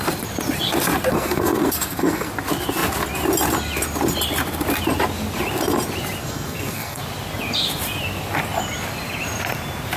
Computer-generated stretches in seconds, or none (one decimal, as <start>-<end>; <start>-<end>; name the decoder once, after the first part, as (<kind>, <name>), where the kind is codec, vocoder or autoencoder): 1.1-2.3 (codec, SNAC); 6.2-7.0